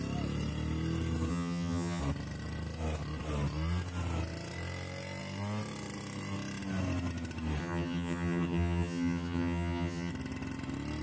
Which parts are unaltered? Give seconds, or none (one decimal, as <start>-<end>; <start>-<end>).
0.0-1.3; 2.0-7.6; 10.1-11.0